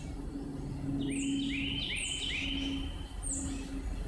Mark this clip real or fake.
real